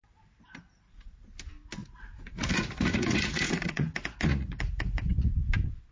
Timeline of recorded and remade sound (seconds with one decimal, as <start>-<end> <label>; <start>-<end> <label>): 0.0-1.8 recorded; 1.8-5.3 remade; 5.3-5.9 recorded